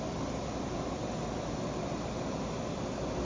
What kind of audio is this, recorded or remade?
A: recorded